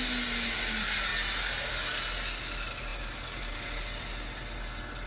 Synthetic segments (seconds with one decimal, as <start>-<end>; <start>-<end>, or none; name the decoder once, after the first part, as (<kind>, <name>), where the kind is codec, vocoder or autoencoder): none